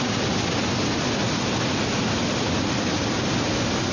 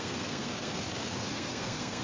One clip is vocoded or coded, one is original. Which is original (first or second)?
first